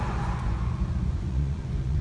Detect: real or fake fake